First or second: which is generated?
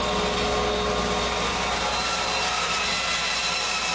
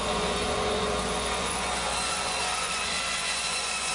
second